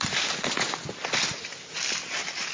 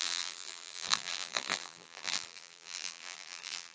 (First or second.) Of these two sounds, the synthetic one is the second